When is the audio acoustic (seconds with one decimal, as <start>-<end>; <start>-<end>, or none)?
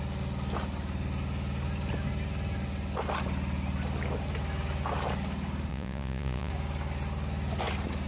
0.0-5.7; 6.5-8.1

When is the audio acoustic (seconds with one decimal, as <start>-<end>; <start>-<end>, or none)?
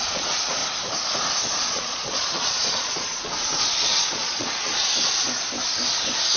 0.6-1.4; 4.7-6.4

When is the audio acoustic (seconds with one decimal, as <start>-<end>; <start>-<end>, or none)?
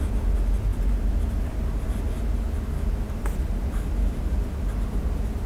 0.0-5.5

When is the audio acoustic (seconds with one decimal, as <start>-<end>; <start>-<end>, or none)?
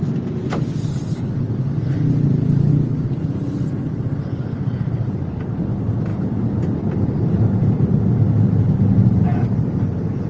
0.0-10.3